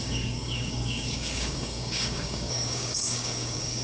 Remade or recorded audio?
remade